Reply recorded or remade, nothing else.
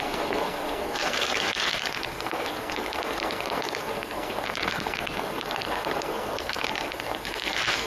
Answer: remade